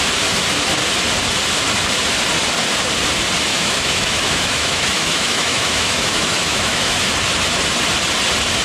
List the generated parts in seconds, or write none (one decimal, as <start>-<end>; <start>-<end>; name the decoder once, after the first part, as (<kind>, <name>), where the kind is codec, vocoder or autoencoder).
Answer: 3.5-7.1 (autoencoder, DAC-VAE)